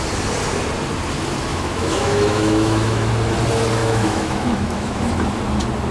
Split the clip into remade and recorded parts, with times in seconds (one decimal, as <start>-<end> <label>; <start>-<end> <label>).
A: 0.0-1.5 recorded; 1.5-3.1 remade; 3.1-3.8 recorded; 3.8-5.1 remade; 5.1-5.9 recorded